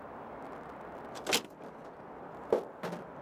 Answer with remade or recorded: recorded